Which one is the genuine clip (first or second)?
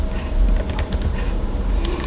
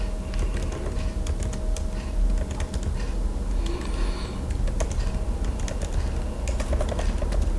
second